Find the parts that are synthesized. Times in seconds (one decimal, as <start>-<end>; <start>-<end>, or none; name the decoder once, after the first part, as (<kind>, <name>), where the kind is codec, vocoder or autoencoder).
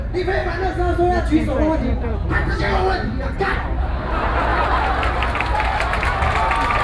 2.1-2.8 (vocoder, BigVGAN v2)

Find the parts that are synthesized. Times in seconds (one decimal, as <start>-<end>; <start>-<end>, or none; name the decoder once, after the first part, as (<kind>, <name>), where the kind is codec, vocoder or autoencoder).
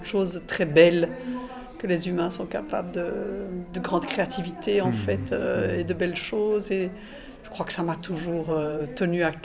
2.7-3.3 (vocoder, BigVGAN v2); 7.4-8.8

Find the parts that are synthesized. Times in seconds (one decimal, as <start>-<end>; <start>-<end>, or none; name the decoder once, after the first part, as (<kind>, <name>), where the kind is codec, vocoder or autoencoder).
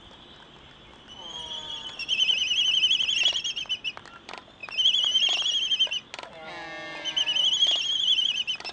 none